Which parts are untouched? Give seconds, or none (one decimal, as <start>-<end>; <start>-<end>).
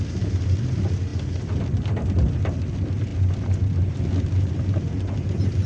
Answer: 0.0-5.7